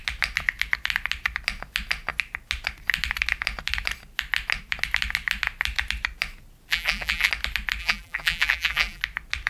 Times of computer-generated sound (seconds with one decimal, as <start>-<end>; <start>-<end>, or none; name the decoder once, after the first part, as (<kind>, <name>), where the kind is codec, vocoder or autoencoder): 6.7-7.3 (vocoder, BigVGAN v2); 7.8-9.0